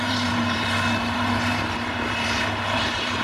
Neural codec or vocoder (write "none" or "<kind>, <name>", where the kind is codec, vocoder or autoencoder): vocoder, BigVGAN v2